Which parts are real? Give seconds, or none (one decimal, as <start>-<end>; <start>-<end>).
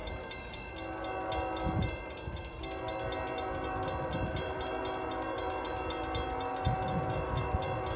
0.0-8.0